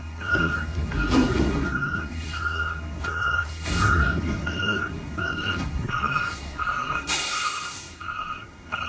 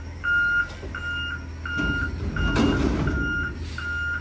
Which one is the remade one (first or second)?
first